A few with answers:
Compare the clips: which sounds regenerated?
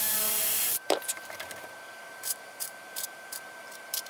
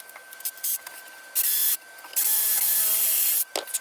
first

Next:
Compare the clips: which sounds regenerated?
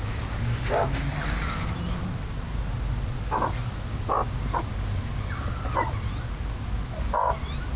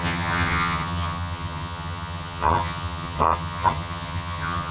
second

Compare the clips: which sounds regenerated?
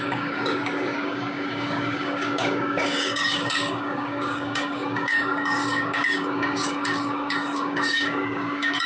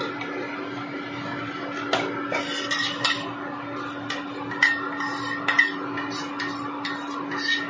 first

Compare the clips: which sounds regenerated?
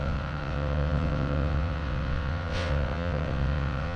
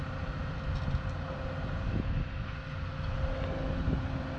first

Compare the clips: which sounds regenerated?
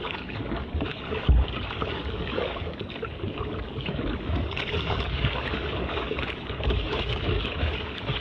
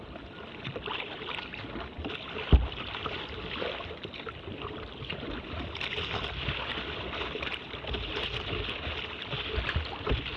first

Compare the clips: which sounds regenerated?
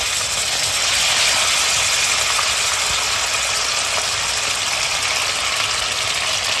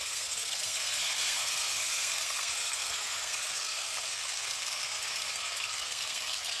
second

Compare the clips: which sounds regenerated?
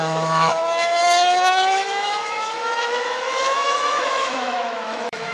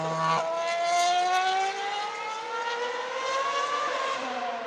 first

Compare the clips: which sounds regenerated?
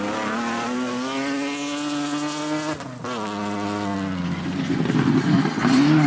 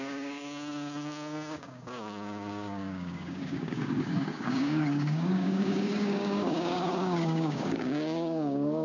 second